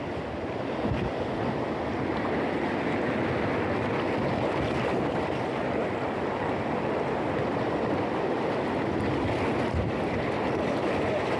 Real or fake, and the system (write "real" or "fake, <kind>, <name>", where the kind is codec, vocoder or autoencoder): real